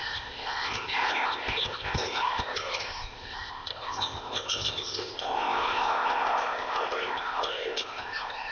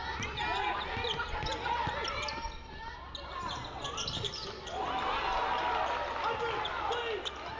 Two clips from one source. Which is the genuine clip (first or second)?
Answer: second